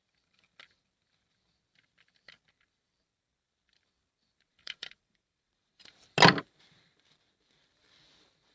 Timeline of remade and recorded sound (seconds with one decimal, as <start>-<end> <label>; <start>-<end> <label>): 0.0-4.5 recorded; 4.5-5.9 remade; 5.9-8.5 recorded

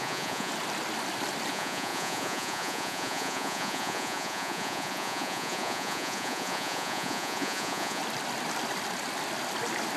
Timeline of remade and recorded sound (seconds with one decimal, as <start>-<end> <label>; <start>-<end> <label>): 0.0-0.5 remade; 0.5-1.5 recorded; 1.5-8.0 remade; 8.0-10.0 recorded

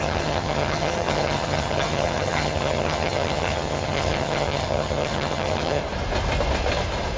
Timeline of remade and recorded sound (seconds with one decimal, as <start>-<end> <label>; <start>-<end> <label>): 0.0-5.8 remade; 5.8-7.2 recorded

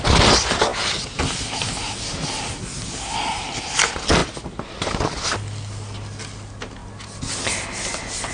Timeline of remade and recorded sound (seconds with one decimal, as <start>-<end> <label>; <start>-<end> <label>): 0.0-8.3 recorded